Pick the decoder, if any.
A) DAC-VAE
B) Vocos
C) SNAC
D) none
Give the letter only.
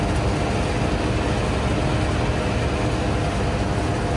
D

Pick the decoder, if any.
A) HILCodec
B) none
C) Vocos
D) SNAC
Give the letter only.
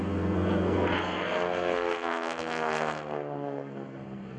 D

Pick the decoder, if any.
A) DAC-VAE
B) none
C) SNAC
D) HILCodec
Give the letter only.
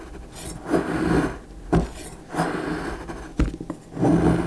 B